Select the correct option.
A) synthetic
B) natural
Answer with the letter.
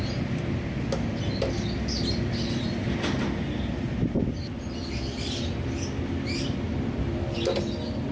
B